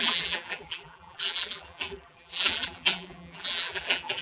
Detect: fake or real fake